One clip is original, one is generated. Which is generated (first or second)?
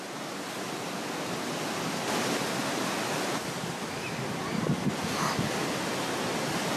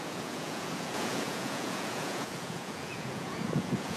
second